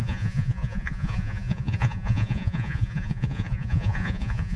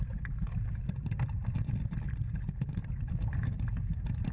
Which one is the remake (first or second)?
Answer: first